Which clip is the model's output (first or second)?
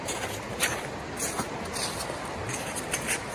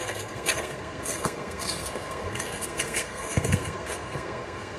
second